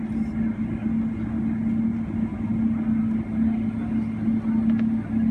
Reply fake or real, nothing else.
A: real